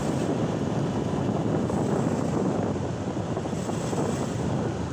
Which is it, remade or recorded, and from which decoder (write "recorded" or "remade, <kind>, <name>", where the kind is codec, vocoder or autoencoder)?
recorded